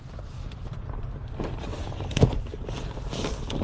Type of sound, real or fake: fake